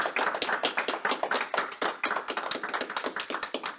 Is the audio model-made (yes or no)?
no